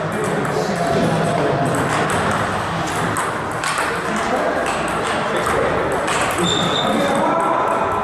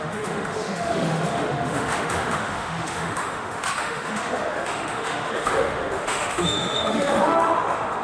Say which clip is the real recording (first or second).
first